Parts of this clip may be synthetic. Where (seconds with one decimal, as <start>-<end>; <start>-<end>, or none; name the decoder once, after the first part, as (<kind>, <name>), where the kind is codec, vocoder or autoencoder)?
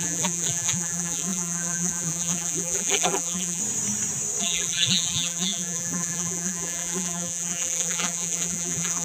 0.0-3.6 (vocoder, BigVGAN v2); 4.4-9.0